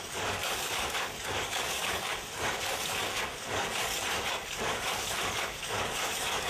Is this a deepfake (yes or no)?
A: yes